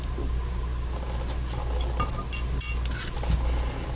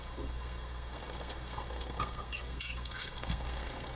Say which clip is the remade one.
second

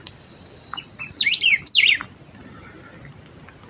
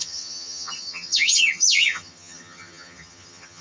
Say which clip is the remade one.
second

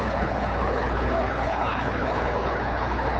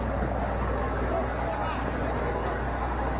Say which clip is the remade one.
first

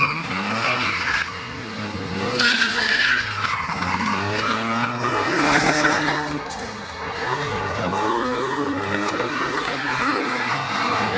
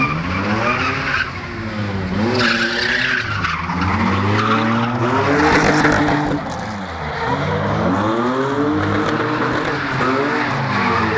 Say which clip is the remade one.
first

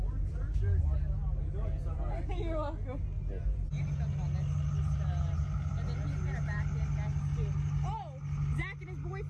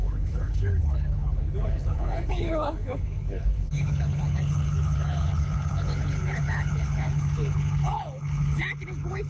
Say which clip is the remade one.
second